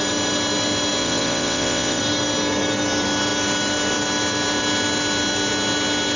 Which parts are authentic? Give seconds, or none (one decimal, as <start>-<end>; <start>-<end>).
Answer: 0.0-1.0; 2.0-6.2